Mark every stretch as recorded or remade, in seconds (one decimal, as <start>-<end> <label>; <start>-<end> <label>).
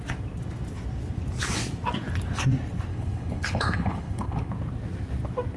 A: 0.0-2.9 recorded; 2.9-4.5 remade; 4.5-5.6 recorded